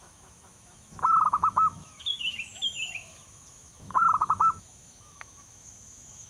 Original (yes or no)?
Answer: no